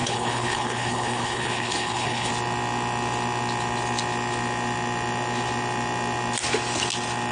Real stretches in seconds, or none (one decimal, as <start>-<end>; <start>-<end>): 2.3-7.3